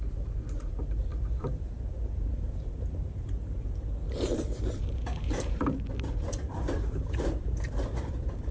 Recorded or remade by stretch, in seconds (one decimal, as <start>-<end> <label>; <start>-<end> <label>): 0.0-8.5 remade